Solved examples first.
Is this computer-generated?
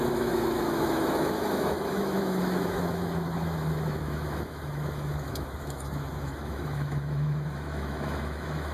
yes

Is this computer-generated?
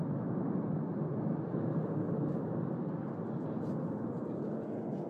no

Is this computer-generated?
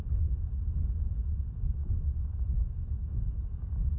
no